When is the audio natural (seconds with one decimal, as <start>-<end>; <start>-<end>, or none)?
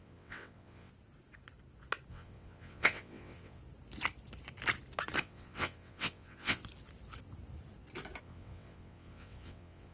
0.9-2.1; 3.6-5.2; 6.6-8.2